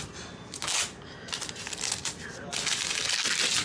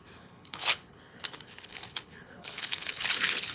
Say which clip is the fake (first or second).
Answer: second